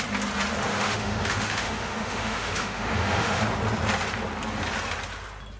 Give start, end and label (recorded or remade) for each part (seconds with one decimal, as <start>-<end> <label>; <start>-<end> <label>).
0.0-0.7 recorded; 0.7-3.4 remade; 3.4-5.6 recorded